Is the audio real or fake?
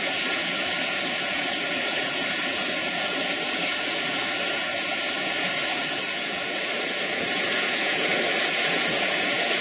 fake